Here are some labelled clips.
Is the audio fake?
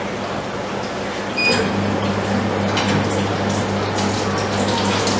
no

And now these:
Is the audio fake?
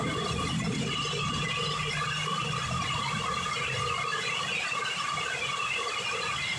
no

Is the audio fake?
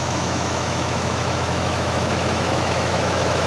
yes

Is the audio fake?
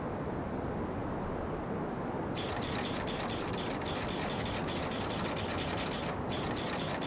no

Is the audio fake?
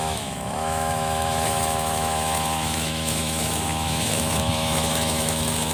yes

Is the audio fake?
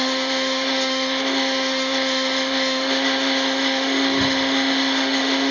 yes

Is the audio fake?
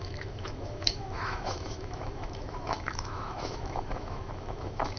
yes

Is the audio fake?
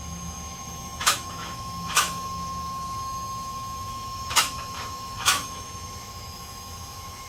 yes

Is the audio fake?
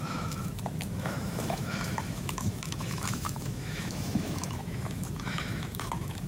yes